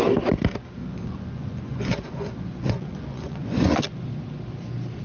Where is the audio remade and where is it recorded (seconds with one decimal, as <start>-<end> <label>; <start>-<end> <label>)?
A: 0.0-0.8 recorded; 0.8-3.8 remade; 3.8-5.0 recorded